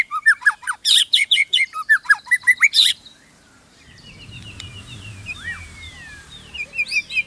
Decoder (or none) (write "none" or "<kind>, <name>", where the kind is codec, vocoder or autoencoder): vocoder, BigVGAN v2